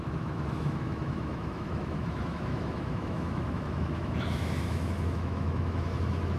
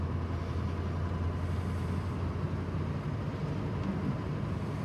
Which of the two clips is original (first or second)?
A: second